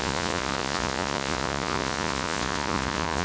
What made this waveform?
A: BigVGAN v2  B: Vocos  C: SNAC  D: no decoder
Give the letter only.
B